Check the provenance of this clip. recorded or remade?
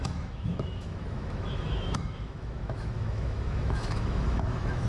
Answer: remade